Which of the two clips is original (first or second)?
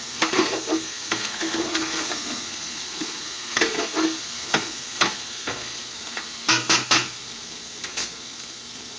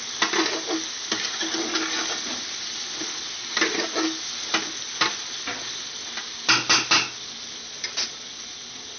second